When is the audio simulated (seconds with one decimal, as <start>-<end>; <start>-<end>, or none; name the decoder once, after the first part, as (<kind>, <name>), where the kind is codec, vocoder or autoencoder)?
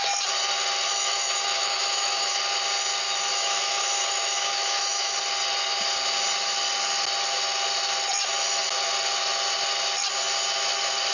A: 0.9-2.4 (autoencoder, DAC-VAE); 3.3-5.1